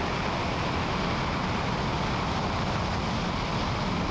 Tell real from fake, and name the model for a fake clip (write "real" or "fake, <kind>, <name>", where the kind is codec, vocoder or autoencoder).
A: real